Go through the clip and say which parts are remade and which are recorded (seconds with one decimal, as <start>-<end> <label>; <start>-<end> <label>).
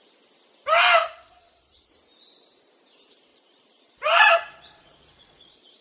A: 0.0-1.0 recorded; 1.0-1.9 remade; 1.9-3.3 recorded; 3.3-5.8 remade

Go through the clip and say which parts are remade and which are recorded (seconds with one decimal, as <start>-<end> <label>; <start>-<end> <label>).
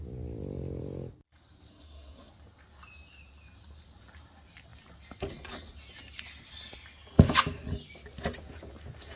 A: 0.0-1.7 recorded; 1.7-2.3 remade; 2.3-9.2 recorded